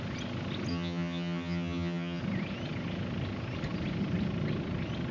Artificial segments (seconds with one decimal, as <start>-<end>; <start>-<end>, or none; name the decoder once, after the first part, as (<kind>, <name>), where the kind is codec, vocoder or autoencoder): 0.7-2.2 (vocoder, HiFi-GAN)